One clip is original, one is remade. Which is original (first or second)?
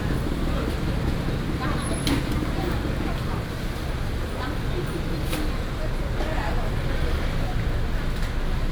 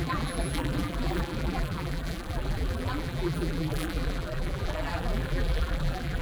first